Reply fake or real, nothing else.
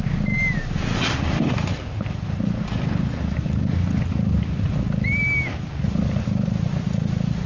real